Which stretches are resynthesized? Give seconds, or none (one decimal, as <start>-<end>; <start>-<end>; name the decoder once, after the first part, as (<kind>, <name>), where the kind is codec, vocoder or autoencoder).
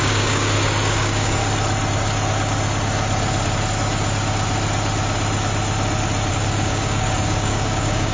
0.0-1.4 (codec, DAC); 6.3-8.1